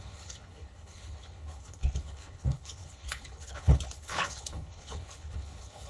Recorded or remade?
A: remade